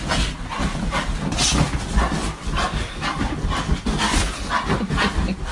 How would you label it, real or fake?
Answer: real